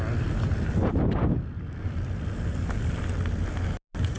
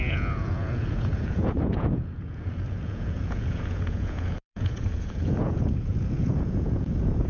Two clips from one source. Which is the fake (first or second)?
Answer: second